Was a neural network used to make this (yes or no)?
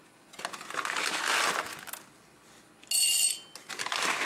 no